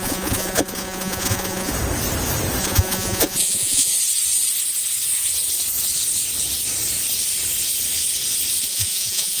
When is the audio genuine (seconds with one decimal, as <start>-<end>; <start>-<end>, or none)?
1.7-2.6; 3.9-8.6